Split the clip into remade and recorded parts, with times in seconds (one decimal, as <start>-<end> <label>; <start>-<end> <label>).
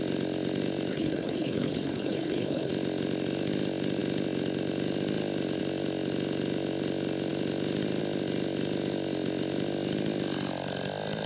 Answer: 0.0-0.9 recorded; 0.9-2.7 remade; 2.7-11.3 recorded